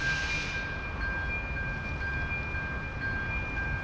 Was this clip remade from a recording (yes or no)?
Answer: no